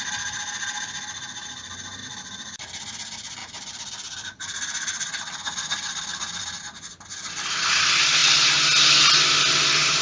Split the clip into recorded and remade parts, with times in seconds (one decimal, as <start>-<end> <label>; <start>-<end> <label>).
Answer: 0.0-2.0 recorded; 2.0-2.6 remade; 2.6-3.4 recorded; 3.4-6.6 remade; 6.6-10.0 recorded